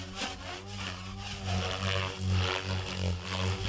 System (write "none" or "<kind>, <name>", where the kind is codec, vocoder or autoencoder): none